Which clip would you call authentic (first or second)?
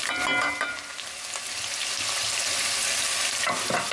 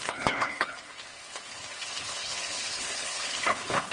first